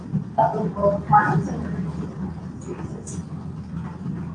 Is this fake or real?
real